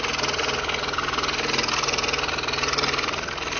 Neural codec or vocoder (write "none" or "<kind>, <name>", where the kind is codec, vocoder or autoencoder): none